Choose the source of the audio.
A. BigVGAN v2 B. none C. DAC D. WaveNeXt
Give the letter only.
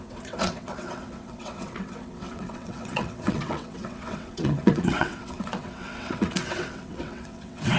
D